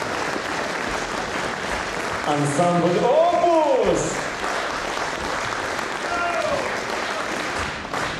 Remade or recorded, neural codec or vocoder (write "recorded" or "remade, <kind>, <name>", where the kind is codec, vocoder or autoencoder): recorded